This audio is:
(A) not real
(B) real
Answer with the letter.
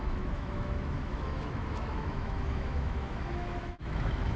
A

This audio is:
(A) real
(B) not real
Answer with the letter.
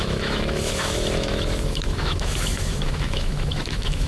B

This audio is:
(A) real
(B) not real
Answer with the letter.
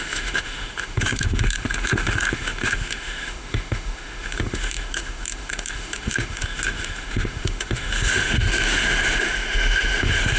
B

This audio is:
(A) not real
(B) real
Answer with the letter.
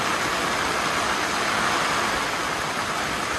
B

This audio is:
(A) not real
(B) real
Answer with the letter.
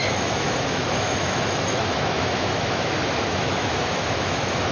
A